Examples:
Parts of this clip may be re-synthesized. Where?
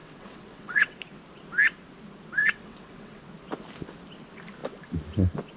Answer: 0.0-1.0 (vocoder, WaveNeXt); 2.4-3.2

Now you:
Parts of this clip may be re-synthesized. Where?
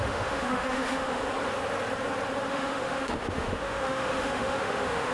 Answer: 0.0-1.2 (autoencoder, DAC-VAE); 2.5-5.1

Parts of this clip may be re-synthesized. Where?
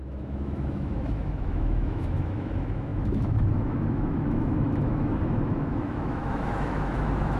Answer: 0.0-7.4 (autoencoder, DAC-VAE)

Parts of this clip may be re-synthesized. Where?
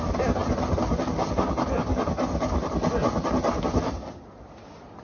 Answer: none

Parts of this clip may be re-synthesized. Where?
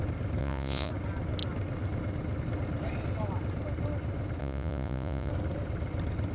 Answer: 0.4-0.9 (vocoder, Vocos); 4.4-5.3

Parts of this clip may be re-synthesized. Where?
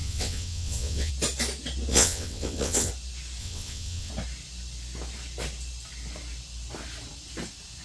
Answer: 0.0-1.1 (vocoder, WaveNeXt); 1.9-2.9; 3.4-4.1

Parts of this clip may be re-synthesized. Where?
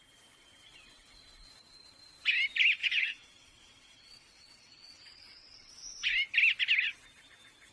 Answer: 2.8-5.7 (vocoder, WaveNeXt)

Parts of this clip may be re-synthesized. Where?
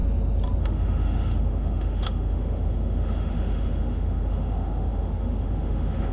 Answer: 0.6-6.1 (autoencoder, DAC-VAE)